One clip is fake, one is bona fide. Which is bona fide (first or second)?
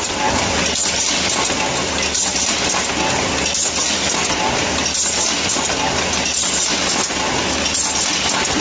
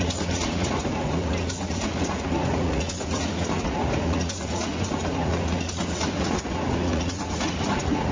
first